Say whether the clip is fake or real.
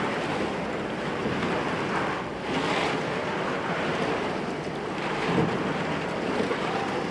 real